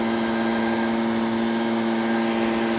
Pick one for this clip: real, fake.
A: real